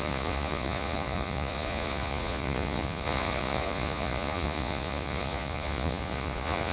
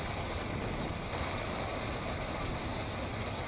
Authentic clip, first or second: second